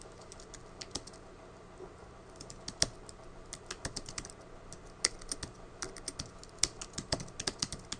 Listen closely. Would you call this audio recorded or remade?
recorded